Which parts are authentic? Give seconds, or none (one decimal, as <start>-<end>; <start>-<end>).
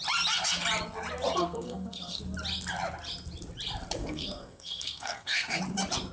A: 0.0-1.4; 2.2-4.0; 5.6-6.1